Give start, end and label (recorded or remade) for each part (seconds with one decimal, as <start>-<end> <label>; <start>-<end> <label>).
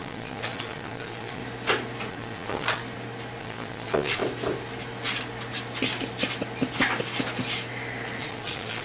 0.0-1.4 remade; 1.4-2.1 recorded; 2.1-2.8 remade; 2.8-3.4 recorded; 3.4-4.2 remade; 4.2-8.2 recorded; 8.2-8.8 remade